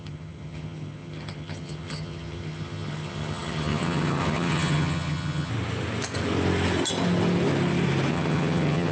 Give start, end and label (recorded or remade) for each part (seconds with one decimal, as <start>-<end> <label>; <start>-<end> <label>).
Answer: 0.0-5.5 remade; 5.5-8.1 recorded; 8.1-8.9 remade

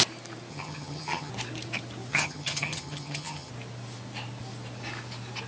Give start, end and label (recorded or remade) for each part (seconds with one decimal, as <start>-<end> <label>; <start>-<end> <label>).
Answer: 0.0-0.5 recorded; 0.5-1.3 remade; 1.3-2.1 recorded; 2.1-3.5 remade; 3.5-5.5 recorded

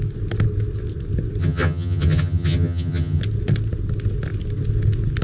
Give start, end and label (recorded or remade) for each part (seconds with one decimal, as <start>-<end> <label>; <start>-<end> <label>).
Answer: 0.0-1.4 recorded; 1.4-3.2 remade; 3.2-5.2 recorded